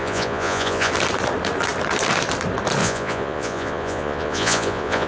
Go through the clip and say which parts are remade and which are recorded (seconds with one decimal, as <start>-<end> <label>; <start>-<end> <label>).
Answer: 0.0-0.9 remade; 0.9-2.8 recorded; 2.8-5.1 remade